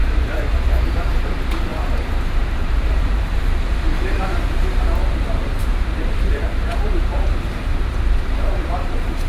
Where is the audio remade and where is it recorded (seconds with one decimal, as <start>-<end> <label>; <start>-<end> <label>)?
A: 0.0-0.7 recorded; 0.7-9.3 remade